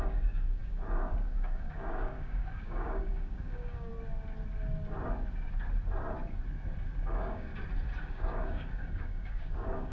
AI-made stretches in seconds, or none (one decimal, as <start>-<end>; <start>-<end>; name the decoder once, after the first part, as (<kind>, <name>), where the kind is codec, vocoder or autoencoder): 0.0-3.9 (codec, DAC); 7.1-7.5; 8.1-9.9